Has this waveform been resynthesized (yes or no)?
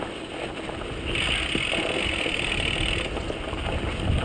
no